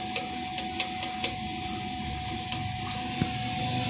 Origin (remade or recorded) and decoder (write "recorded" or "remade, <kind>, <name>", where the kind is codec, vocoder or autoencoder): recorded